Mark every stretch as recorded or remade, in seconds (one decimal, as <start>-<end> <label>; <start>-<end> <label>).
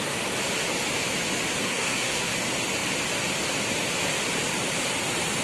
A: 0.0-1.6 recorded; 1.6-2.3 remade; 2.3-5.4 recorded